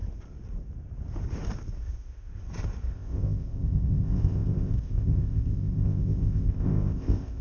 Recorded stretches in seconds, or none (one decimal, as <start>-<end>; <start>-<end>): 0.0-1.8; 2.3-2.8